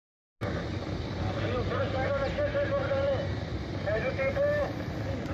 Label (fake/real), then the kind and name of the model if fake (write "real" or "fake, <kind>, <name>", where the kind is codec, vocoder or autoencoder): real